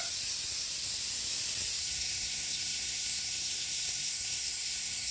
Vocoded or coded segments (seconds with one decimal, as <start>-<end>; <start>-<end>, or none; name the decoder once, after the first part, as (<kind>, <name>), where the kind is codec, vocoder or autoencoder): 1.8-5.1 (codec, SNAC)